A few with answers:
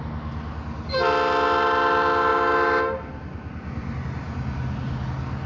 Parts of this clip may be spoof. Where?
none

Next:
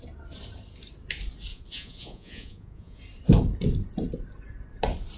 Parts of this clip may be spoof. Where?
1.5-3.0 (vocoder, Vocos)